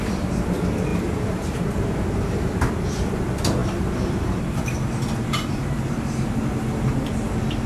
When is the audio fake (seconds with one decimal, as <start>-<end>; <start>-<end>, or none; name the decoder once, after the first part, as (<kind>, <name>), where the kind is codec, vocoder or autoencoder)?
0.9-2.7 (vocoder, BigVGAN v2); 3.6-6.3